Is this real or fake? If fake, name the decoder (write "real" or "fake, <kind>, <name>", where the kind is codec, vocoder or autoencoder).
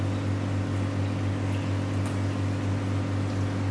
real